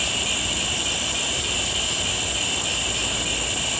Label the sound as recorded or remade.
recorded